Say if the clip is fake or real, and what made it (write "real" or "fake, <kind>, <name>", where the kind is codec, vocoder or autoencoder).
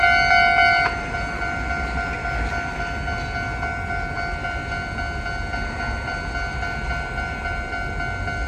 real